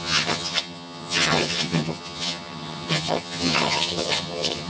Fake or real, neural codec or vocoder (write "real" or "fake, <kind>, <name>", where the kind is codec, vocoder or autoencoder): fake, vocoder, HiFi-GAN